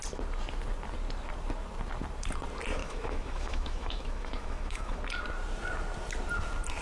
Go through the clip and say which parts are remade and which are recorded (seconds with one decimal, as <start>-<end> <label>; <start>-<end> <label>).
0.0-2.8 recorded; 2.8-5.0 remade; 5.0-6.8 recorded